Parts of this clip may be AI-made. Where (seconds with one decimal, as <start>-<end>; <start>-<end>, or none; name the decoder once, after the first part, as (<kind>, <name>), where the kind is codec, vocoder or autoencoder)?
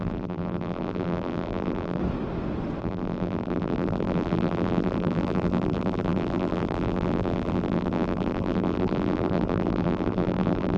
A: 0.0-2.0 (vocoder, BigVGAN v2); 2.8-10.8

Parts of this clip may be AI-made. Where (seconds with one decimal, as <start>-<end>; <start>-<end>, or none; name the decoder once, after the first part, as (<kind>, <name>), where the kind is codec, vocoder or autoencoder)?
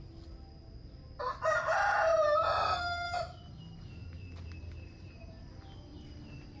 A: 2.1-3.6 (vocoder, BigVGAN v2); 4.0-5.4; 5.9-6.6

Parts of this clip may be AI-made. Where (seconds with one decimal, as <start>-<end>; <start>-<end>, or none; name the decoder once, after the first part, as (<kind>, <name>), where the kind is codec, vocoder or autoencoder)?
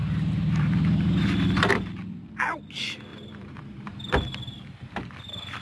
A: 0.0-1.7 (vocoder, BigVGAN v2); 3.1-4.9